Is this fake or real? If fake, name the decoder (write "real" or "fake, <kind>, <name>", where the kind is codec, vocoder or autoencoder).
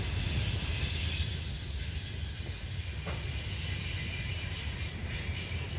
real